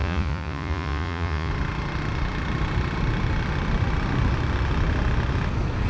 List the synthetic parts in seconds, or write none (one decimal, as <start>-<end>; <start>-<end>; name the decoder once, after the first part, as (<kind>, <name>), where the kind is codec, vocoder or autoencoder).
0.0-1.5 (vocoder, Vocos)